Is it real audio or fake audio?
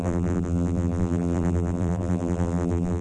fake